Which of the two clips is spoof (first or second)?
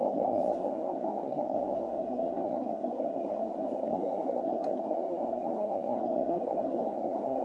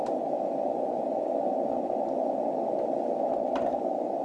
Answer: first